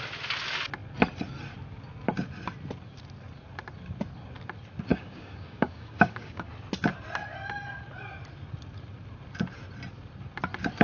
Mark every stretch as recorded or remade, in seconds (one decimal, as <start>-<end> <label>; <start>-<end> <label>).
0.0-4.9 recorded; 4.9-6.5 remade; 6.5-10.8 recorded